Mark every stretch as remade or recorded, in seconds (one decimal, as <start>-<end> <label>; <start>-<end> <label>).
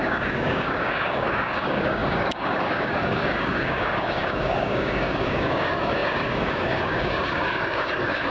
0.0-8.3 remade